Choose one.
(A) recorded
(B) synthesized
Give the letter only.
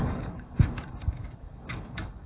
B